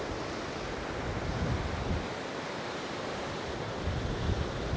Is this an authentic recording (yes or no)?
yes